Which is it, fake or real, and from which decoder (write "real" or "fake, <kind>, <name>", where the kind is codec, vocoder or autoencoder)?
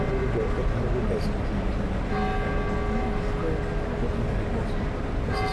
real